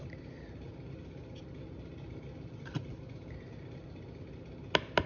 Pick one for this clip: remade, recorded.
recorded